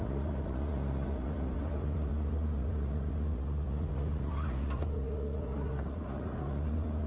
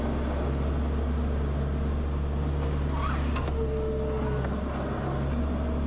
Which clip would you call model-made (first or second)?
first